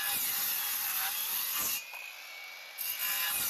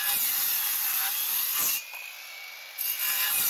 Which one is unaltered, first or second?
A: first